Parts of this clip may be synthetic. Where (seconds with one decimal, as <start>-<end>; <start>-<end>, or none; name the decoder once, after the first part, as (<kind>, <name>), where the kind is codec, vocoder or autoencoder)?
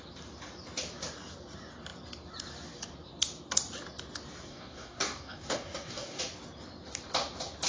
4.5-6.2 (codec, DAC)